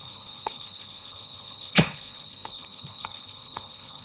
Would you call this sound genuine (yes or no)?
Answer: no